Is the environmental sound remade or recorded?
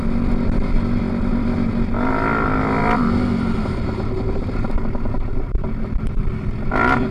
recorded